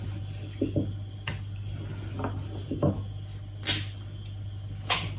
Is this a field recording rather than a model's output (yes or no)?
yes